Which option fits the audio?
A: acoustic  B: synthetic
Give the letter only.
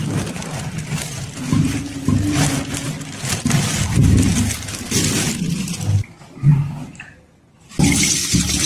A